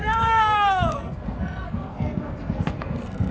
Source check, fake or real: fake